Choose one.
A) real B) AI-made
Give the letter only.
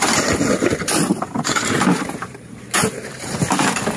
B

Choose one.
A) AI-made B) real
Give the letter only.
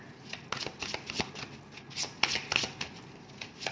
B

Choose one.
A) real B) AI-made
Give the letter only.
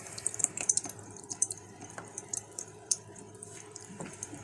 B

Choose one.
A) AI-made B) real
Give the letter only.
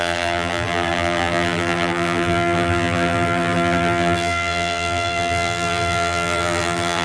A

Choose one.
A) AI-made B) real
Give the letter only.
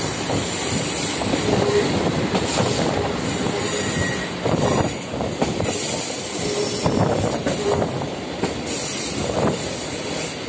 B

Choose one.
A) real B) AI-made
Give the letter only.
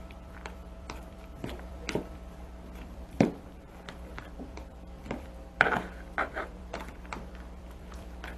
B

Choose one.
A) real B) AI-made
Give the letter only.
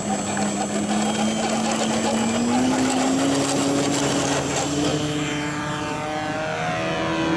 A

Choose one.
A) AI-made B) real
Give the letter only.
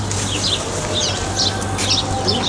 B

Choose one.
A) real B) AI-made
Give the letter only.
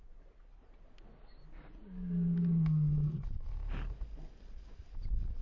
A